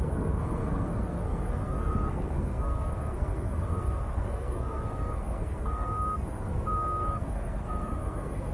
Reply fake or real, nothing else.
fake